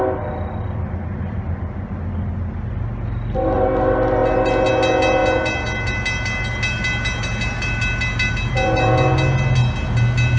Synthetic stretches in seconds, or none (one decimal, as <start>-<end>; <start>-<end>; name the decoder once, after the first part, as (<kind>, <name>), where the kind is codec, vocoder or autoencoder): none